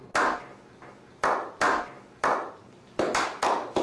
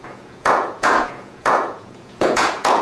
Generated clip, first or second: second